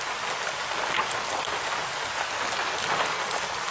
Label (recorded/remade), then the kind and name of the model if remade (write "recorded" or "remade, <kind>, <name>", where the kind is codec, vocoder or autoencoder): recorded